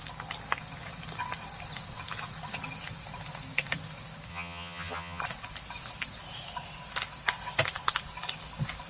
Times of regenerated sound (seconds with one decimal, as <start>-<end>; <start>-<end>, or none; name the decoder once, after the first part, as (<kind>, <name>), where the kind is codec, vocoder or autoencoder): 4.3-5.2 (vocoder, HiFi-GAN)